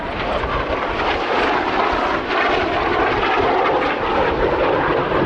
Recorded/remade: recorded